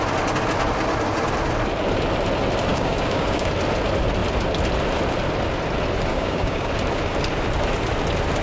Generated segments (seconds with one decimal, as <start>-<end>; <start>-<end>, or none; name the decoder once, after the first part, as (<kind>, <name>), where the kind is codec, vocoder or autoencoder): 2.7-3.5 (codec, DAC); 6.1-6.7